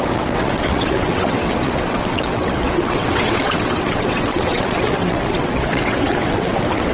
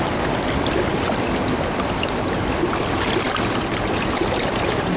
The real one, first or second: second